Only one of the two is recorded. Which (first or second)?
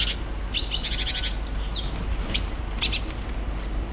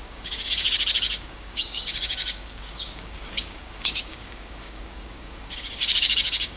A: first